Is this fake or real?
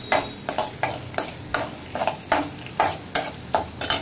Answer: real